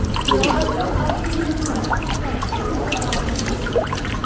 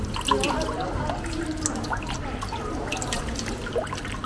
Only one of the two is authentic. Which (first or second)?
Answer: second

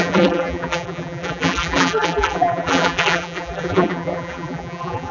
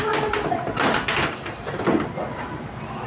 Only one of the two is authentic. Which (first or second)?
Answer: second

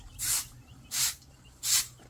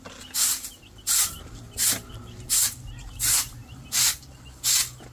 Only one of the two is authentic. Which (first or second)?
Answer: second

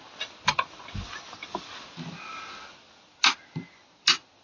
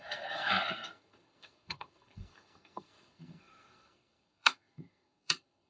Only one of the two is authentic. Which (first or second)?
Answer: first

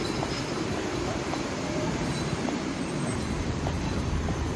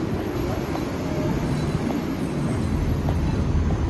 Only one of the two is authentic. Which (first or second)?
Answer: second